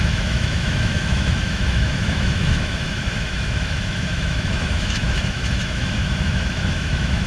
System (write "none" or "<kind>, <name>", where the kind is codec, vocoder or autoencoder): autoencoder, DAC-VAE